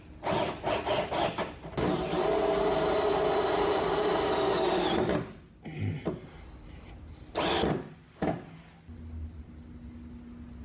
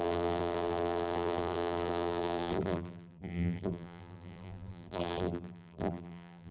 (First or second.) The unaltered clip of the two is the first